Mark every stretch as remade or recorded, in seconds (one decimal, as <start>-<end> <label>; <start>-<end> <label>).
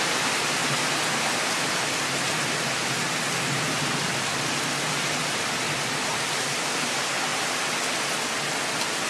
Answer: 0.0-9.1 recorded